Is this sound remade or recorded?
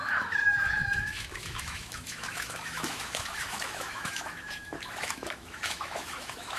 remade